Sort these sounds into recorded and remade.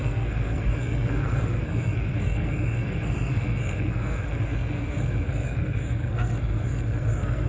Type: remade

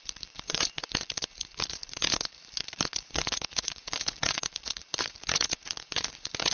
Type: remade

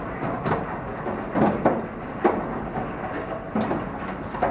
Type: recorded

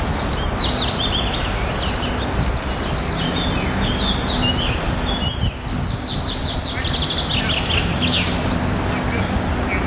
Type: recorded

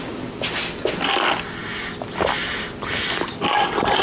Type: recorded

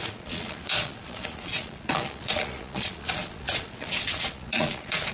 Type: remade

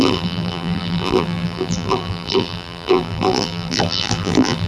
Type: remade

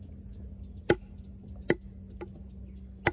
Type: recorded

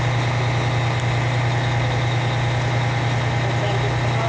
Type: recorded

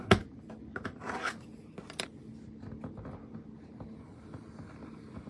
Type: recorded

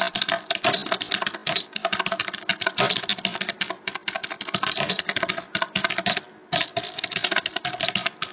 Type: recorded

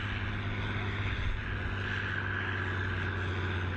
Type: recorded